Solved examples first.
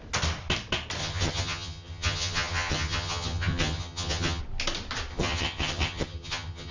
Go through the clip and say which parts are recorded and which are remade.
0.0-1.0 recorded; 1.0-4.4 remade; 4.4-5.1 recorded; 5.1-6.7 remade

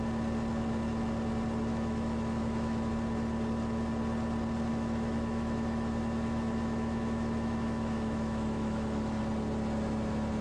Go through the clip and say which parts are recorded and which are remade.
0.0-1.7 recorded; 1.7-2.9 remade; 2.9-4.7 recorded; 4.7-9.2 remade; 9.2-10.4 recorded